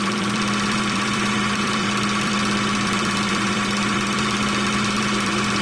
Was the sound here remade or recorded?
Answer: remade